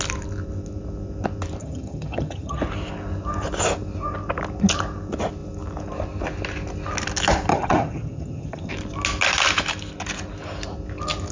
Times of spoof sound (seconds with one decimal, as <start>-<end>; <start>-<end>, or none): 1.6-2.6; 7.5-8.7